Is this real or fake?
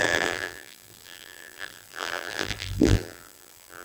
fake